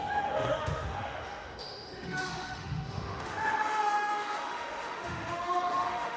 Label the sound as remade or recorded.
remade